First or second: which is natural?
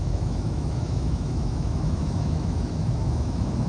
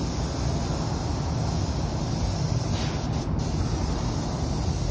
second